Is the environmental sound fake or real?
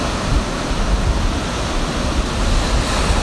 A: real